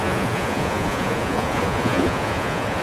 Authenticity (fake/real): fake